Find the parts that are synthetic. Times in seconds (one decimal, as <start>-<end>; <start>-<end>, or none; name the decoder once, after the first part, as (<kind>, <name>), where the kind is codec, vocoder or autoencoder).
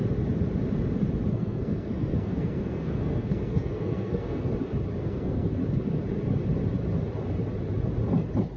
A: 1.3-4.5 (codec, SNAC); 5.0-5.6